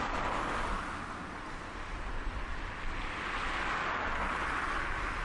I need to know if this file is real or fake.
real